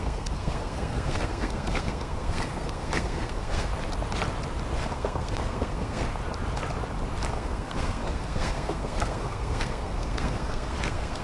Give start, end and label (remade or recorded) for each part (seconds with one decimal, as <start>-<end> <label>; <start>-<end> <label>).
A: 0.0-3.7 remade; 3.7-4.8 recorded; 4.8-6.1 remade; 6.1-7.3 recorded; 7.3-11.2 remade